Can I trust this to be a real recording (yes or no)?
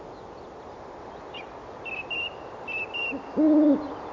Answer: yes